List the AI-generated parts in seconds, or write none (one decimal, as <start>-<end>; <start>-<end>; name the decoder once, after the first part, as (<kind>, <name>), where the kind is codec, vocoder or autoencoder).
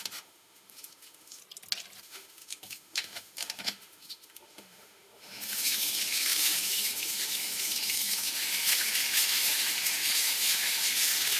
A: 0.0-1.4 (autoencoder, DAC-VAE); 2.0-11.4